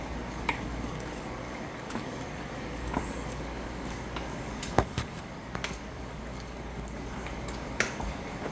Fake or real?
fake